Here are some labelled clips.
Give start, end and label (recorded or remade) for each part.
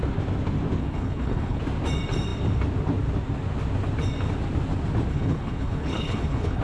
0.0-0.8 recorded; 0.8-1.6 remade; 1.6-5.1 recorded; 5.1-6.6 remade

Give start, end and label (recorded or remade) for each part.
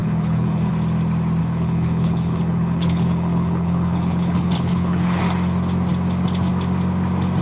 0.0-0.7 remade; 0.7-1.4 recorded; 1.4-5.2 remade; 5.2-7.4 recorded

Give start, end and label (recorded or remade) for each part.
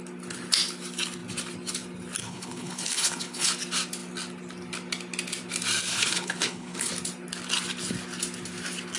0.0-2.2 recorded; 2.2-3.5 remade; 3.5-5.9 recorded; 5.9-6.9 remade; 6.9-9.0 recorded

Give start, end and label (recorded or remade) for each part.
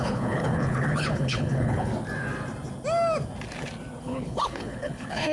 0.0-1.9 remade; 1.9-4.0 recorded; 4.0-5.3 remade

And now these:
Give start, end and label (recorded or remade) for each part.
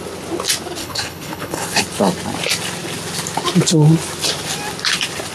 0.0-0.8 recorded; 0.8-1.8 remade; 1.8-5.3 recorded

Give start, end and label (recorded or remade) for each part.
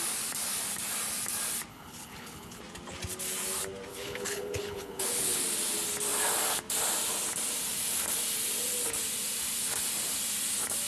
0.0-1.7 recorded; 1.7-2.6 remade; 2.6-3.9 recorded; 3.9-5.4 remade; 5.4-10.9 recorded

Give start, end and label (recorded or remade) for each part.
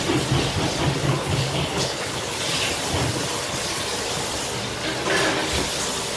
0.0-1.1 recorded; 1.1-2.4 remade; 2.4-6.2 recorded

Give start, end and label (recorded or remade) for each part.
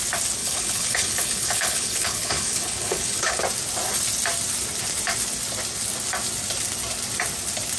0.0-0.4 recorded; 0.4-3.4 remade; 3.4-7.8 recorded